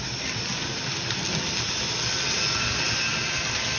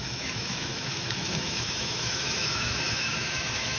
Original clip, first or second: first